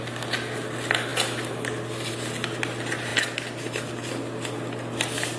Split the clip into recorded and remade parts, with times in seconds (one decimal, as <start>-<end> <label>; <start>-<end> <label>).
0.0-5.4 recorded